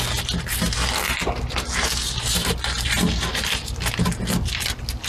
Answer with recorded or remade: recorded